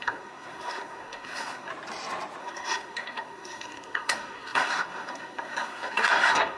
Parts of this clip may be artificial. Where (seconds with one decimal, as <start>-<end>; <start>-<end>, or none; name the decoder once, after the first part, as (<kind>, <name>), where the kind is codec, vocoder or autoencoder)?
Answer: 0.0-1.7 (codec, SNAC); 2.4-6.6